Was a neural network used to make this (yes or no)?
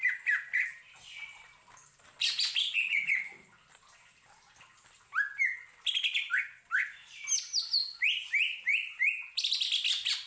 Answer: no